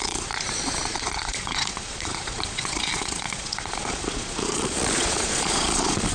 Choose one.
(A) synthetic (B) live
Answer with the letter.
A